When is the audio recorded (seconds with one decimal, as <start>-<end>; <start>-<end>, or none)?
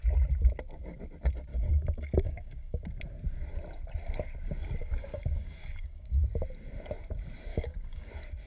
0.0-1.5; 2.8-4.8; 6.2-7.5; 8.1-8.5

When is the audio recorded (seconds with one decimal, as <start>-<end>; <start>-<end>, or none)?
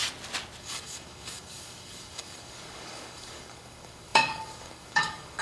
0.0-0.6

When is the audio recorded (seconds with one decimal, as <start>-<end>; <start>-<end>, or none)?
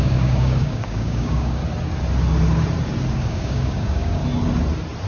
1.6-3.1; 4.2-5.1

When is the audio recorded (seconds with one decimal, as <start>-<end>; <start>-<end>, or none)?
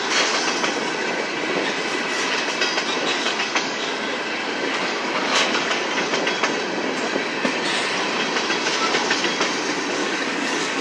0.0-3.1; 4.1-4.6; 5.8-10.0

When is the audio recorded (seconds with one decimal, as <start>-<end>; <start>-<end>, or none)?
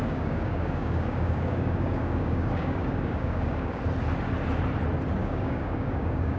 3.8-5.2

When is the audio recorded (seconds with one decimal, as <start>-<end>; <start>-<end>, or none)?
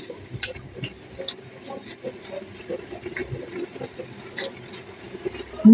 0.0-5.7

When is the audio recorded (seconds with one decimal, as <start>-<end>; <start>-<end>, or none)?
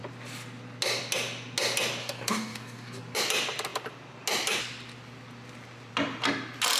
0.0-2.0; 3.0-6.8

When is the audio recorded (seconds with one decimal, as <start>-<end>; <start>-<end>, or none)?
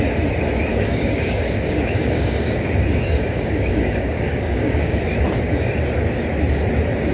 0.0-0.7; 5.0-7.1